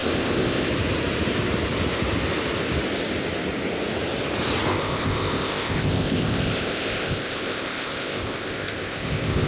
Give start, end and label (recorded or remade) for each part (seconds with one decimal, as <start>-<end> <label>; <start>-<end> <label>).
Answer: 0.0-0.7 remade; 0.7-4.7 recorded; 4.7-9.5 remade